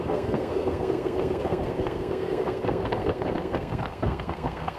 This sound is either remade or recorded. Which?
remade